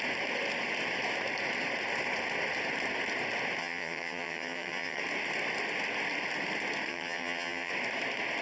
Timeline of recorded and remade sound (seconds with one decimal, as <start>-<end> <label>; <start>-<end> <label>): 0.0-3.6 recorded; 3.6-5.0 remade; 5.0-6.9 recorded; 6.9-7.7 remade; 7.7-8.4 recorded